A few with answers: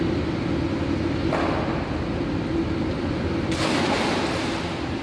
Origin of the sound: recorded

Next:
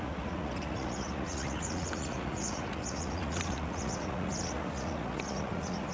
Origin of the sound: remade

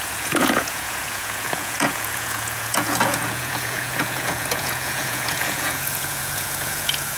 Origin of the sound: remade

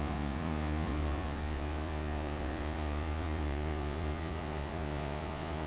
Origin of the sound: remade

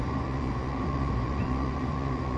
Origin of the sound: remade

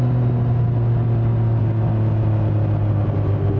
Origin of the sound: recorded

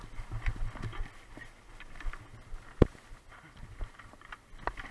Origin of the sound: recorded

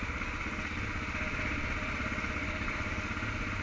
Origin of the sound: recorded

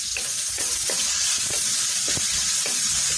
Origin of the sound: remade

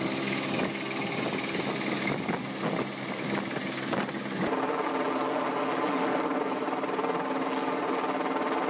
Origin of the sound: recorded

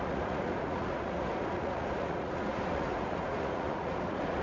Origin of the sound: remade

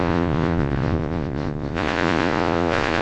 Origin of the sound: remade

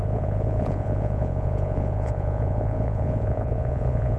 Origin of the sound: remade